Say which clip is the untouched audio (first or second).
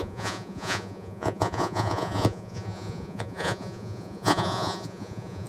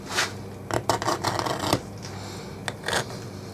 second